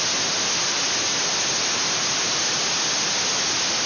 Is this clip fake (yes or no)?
no